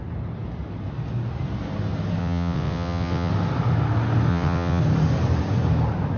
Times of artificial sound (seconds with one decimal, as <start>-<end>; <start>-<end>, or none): 2.2-3.3; 4.3-4.8